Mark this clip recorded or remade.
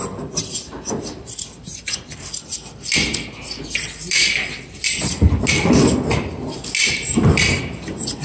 recorded